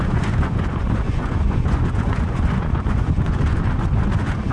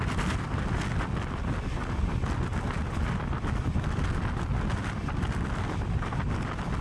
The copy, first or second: first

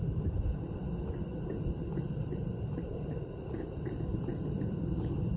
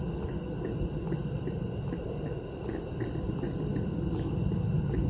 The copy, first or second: first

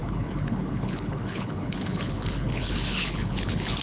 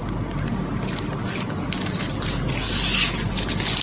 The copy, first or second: first